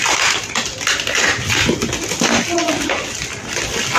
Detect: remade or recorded recorded